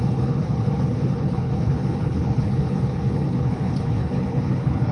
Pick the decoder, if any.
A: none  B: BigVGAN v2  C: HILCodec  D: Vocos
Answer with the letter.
C